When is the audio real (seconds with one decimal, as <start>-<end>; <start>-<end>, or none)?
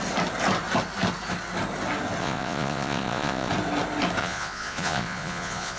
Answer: 0.0-2.2; 3.5-4.2